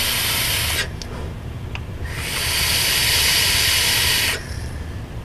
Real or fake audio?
real